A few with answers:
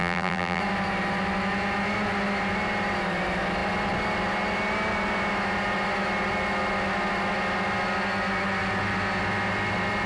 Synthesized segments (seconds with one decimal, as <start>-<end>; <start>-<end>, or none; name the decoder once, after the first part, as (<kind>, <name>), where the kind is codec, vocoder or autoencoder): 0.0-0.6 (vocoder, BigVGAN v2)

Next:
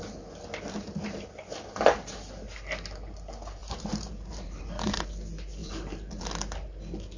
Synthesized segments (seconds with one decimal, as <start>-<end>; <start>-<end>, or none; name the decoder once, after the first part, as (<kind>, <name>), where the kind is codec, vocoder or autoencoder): 3.6-4.6 (vocoder, BigVGAN v2); 5.6-6.2

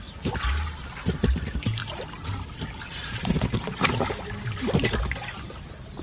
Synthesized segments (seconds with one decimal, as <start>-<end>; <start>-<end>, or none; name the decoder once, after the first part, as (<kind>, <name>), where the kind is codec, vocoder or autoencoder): 1.8-2.4 (vocoder, BigVGAN v2)

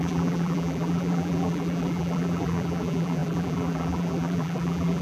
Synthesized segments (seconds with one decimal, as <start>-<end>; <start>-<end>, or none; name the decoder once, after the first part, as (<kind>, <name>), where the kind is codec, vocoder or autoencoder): 0.0-5.0 (vocoder, BigVGAN v2)